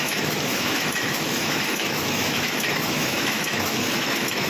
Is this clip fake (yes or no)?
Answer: yes